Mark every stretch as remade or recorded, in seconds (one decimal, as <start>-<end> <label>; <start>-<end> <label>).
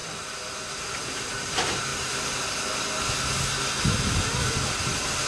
0.0-0.6 recorded; 0.6-1.9 remade; 1.9-5.3 recorded